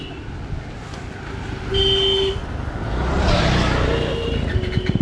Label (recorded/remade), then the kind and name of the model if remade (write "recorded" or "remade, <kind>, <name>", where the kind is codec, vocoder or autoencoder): recorded